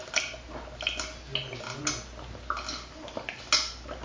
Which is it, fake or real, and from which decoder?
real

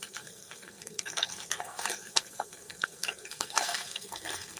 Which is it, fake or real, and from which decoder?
fake, codec, SNAC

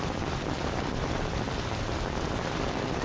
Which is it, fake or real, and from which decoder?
real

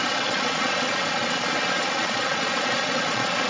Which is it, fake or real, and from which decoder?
fake, vocoder, Vocos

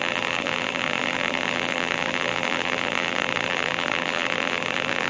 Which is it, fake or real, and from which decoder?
fake, vocoder, BigVGAN v2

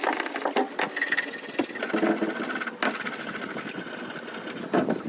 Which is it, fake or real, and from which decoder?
real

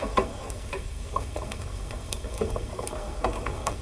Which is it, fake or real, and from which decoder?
fake, codec, SNAC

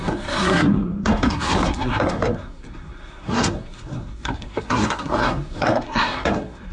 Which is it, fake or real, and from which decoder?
fake, codec, SNAC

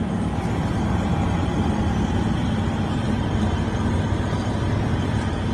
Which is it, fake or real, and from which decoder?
fake, vocoder, BigVGAN v2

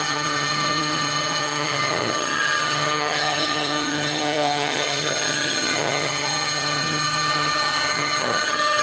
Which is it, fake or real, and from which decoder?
fake, vocoder, HiFi-GAN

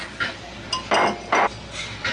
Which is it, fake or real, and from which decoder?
real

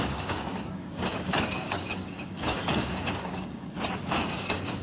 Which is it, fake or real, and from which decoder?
fake, codec, DAC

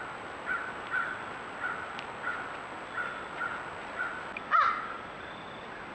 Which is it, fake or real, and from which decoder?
real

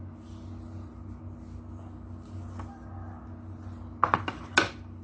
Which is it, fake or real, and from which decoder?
real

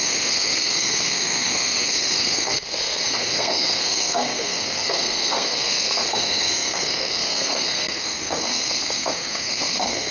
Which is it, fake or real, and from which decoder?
fake, codec, SNAC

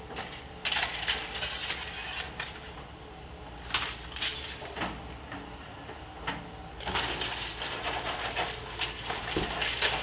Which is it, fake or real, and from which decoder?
real